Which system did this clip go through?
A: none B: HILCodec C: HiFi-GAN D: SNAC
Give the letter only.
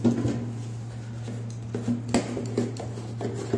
A